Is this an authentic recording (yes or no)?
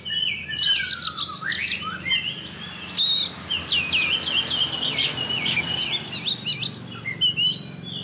yes